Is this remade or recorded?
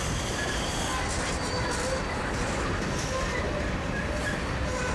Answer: recorded